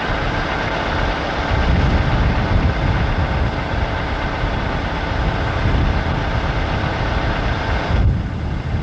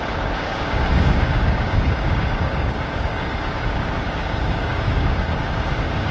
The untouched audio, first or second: first